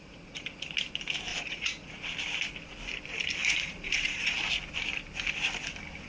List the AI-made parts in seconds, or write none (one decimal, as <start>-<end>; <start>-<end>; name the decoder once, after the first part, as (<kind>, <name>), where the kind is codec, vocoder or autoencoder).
0.0-0.5 (vocoder, Vocos); 1.3-2.0; 3.4-4.5